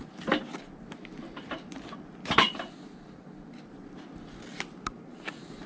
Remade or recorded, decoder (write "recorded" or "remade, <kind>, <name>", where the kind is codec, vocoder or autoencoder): recorded